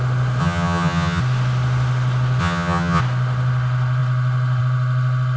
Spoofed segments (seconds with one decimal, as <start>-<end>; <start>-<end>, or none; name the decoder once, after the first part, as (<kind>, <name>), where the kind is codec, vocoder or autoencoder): 0.4-1.2 (vocoder, HiFi-GAN); 2.4-3.0